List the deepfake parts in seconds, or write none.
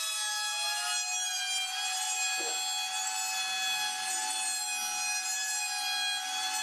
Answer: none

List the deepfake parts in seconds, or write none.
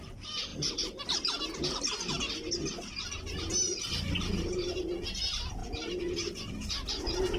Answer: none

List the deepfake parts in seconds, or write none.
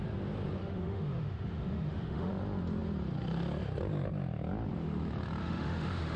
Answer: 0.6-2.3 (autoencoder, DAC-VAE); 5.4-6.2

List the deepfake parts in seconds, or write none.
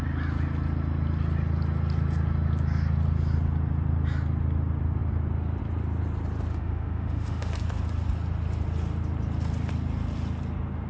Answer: 6.5-7.5 (autoencoder, DAC-VAE)